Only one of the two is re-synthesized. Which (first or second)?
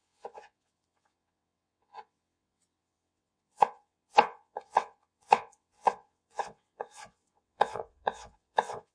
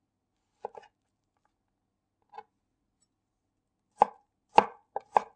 first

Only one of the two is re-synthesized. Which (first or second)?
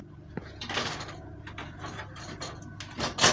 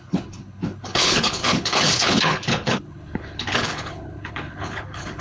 second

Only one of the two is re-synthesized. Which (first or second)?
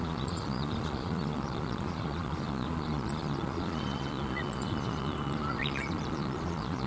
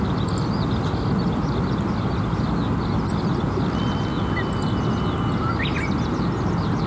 first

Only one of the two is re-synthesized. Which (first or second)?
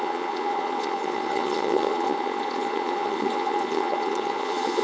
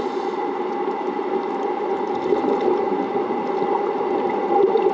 first